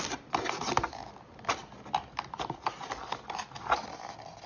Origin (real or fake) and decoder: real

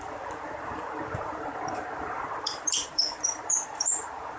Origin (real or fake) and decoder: fake, vocoder, BigVGAN v2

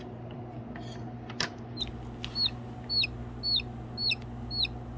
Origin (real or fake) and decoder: real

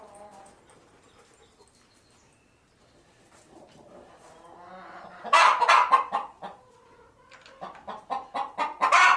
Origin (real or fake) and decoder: real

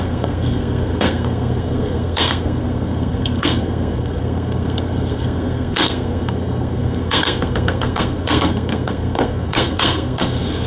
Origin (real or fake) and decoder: fake, codec, SNAC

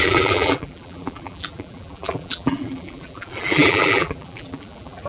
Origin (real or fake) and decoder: fake, vocoder, BigVGAN v2